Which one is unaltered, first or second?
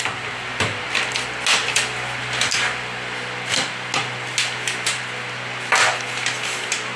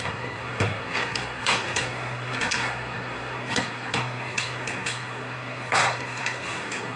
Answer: first